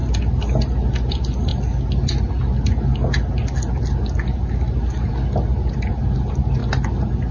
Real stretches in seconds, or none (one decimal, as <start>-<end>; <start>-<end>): 0.0-7.3